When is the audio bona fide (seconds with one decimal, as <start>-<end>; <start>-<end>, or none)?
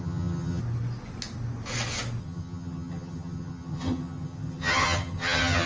0.6-2.2